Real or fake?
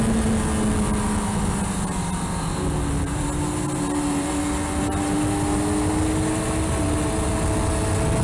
real